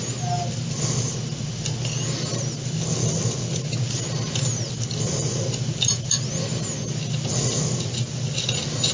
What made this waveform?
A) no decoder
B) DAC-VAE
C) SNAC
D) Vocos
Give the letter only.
A